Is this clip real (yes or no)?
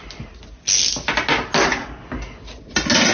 yes